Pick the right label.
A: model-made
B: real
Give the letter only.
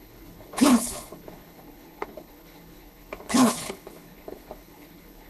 A